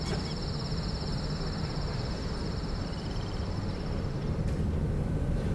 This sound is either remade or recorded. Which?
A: remade